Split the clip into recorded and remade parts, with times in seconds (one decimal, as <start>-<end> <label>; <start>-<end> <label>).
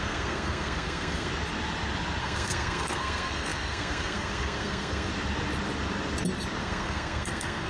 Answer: 0.0-1.3 remade; 1.3-2.2 recorded; 2.2-5.1 remade; 5.1-6.6 recorded; 6.6-7.7 remade